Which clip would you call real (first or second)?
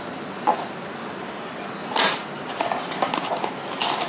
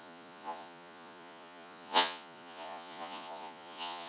first